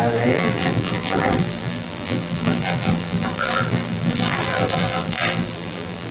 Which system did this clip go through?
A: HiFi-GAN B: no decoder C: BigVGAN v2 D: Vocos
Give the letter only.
C